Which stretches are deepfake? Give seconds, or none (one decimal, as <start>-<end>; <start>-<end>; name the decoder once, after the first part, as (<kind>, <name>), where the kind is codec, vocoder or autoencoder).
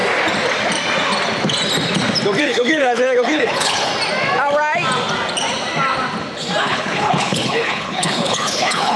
2.4-3.9 (codec, HILCodec); 6.6-9.0